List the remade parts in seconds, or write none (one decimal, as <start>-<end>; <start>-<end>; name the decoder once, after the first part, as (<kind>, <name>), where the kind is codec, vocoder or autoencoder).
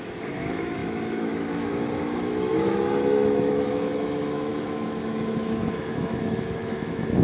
0.0-7.2 (autoencoder, DAC-VAE)